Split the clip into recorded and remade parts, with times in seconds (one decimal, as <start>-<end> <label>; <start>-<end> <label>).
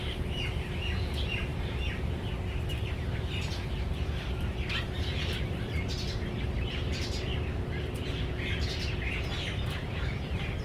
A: 0.0-7.3 remade; 7.3-8.1 recorded; 8.1-10.6 remade